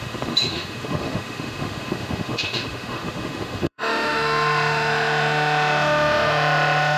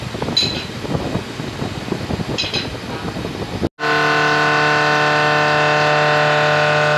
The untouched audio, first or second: second